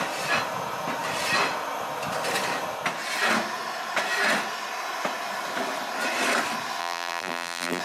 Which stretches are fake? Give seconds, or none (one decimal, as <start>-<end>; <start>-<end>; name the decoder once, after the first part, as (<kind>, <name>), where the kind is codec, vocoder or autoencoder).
6.8-7.8 (vocoder, BigVGAN v2)